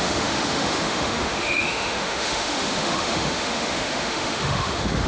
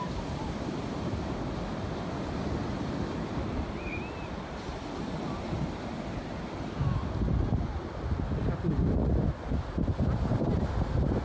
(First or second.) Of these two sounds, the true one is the second